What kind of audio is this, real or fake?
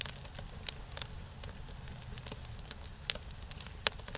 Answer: real